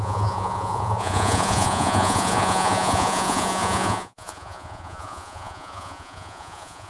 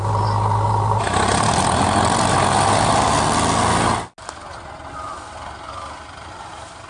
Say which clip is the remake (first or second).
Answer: first